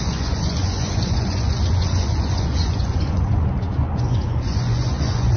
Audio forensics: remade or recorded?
remade